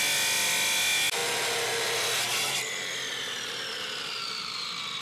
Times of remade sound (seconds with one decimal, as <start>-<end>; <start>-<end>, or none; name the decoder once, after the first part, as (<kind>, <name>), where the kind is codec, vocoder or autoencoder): none